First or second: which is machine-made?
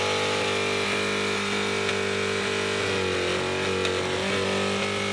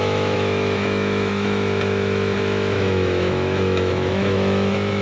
second